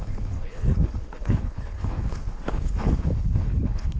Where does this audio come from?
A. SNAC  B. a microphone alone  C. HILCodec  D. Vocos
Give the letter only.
C